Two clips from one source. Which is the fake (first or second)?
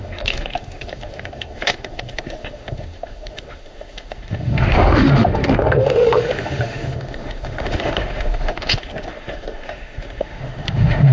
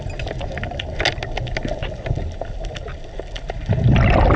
first